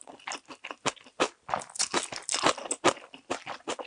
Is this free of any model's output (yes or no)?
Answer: yes